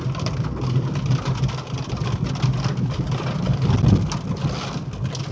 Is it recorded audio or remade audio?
recorded